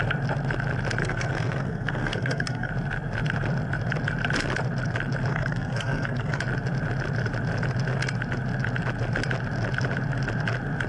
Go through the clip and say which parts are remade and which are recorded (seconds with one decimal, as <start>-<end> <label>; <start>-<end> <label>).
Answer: 0.0-1.0 recorded; 1.0-2.7 remade; 2.7-5.3 recorded; 5.3-6.4 remade; 6.4-10.9 recorded